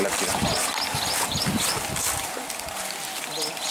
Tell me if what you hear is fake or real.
real